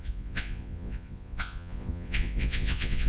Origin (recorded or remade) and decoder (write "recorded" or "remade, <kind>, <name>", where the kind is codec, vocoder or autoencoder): remade, vocoder, Vocos